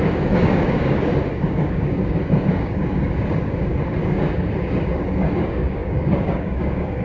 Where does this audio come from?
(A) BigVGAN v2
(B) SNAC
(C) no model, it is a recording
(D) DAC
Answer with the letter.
D